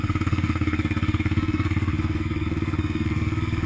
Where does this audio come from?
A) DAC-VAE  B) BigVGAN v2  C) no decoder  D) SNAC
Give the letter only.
D